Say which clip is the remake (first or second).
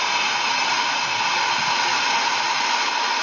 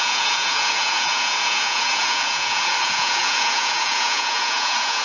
second